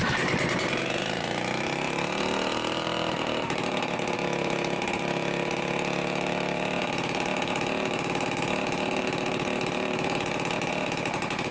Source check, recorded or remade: remade